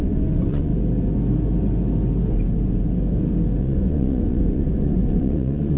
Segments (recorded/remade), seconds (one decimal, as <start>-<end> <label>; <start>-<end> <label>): 0.0-0.7 remade; 0.7-3.6 recorded; 3.6-5.8 remade